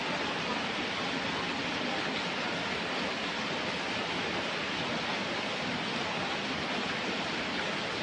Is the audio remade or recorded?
recorded